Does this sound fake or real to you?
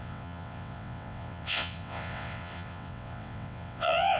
fake